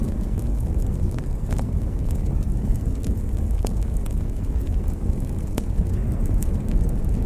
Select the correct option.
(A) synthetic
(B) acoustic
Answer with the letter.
A